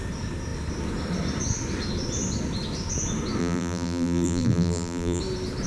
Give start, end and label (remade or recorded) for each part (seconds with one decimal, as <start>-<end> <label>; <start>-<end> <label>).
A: 0.0-3.4 recorded; 3.4-5.2 remade; 5.2-5.7 recorded